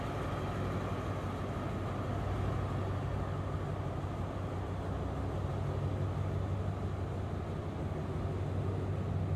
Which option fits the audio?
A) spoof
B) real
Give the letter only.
B